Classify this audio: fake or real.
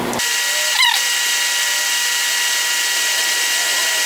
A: real